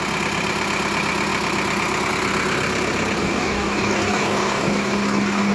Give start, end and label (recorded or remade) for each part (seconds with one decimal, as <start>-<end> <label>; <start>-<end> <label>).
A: 0.0-3.2 recorded; 3.2-5.5 remade